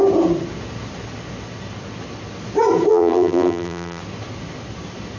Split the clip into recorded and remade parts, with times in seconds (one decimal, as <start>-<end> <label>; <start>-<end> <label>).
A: 0.0-2.9 recorded; 2.9-4.0 remade; 4.0-5.2 recorded